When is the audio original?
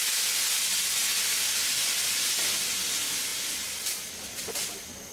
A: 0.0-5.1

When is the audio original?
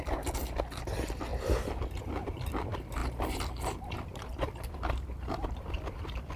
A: 1.3-2.0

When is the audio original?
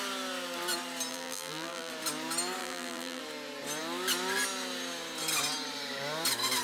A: 0.0-1.1; 1.9-2.6; 3.2-6.6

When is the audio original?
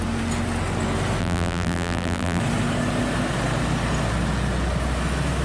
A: 0.0-1.2; 2.4-5.4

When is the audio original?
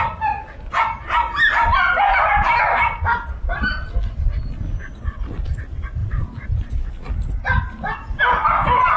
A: 0.0-9.0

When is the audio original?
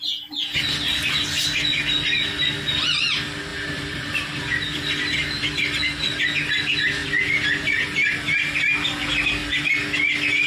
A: 0.0-3.5; 4.4-10.5